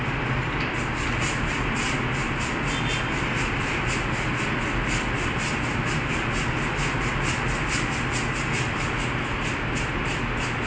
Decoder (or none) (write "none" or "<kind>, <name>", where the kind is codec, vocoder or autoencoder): none